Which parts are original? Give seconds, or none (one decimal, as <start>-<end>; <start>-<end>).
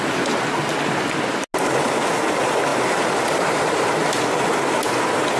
0.0-5.4